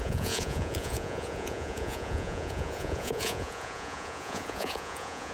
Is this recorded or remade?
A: remade